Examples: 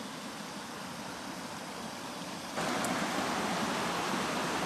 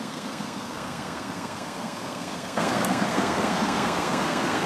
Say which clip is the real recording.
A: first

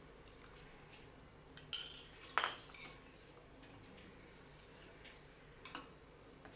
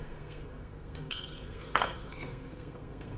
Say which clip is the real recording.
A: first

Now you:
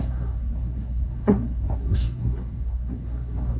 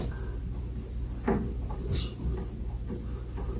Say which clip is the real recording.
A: second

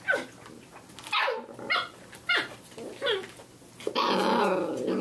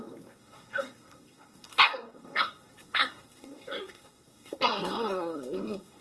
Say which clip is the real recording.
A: first